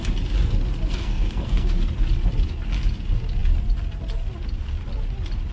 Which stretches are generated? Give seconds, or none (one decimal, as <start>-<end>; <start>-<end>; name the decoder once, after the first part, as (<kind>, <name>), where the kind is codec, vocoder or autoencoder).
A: 0.9-1.7 (codec, SNAC)